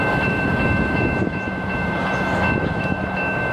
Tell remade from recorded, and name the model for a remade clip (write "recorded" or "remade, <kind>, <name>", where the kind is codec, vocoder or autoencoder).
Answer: remade, autoencoder, DAC-VAE